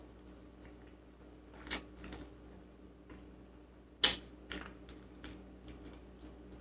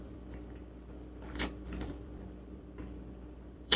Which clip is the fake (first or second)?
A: second